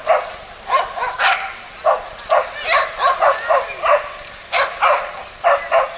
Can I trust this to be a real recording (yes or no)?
yes